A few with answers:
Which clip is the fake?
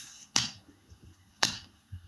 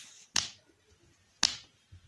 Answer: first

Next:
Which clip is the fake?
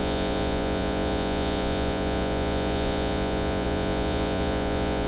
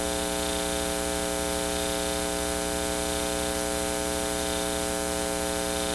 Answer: first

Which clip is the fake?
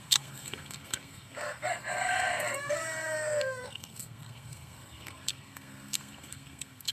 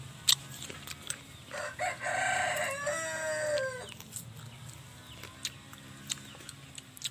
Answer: first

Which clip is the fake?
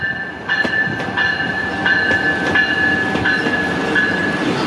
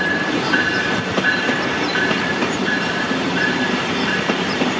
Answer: second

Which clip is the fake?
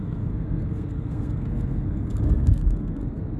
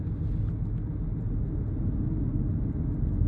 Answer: first